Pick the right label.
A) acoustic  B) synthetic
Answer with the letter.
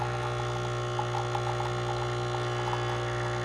A